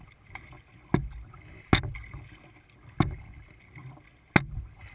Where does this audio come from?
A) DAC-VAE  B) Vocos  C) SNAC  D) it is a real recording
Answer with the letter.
D